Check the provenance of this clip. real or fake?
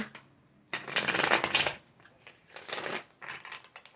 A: real